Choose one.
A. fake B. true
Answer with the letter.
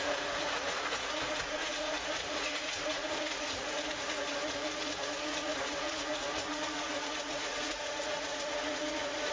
A